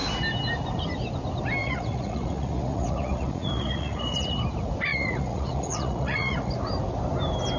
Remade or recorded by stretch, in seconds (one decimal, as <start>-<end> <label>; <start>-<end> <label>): 0.0-1.6 recorded; 1.6-4.4 remade; 4.4-4.9 recorded; 4.9-6.5 remade; 6.5-7.6 recorded